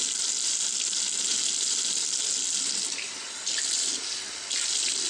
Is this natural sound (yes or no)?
yes